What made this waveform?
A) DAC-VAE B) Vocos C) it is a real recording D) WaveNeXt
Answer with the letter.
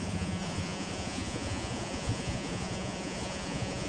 B